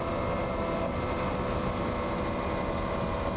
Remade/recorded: recorded